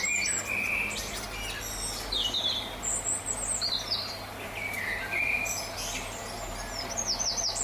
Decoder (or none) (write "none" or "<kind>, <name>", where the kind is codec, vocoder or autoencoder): none